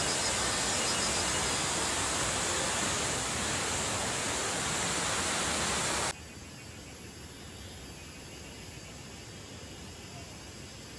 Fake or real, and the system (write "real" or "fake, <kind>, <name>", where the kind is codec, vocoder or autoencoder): real